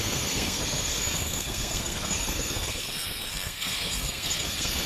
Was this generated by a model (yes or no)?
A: yes